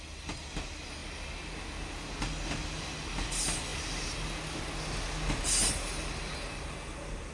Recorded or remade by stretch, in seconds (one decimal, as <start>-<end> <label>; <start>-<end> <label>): 0.0-7.3 recorded